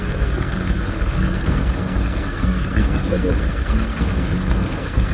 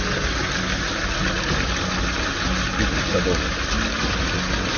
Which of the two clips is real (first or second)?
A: second